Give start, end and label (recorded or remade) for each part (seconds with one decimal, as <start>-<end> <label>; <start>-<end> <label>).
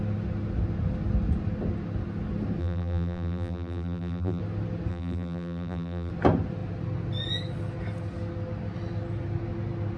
0.0-2.6 recorded; 2.6-4.4 remade; 4.4-4.9 recorded; 4.9-6.1 remade; 6.1-10.0 recorded